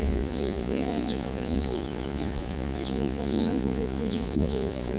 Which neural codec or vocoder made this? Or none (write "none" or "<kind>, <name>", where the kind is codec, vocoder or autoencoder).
vocoder, Vocos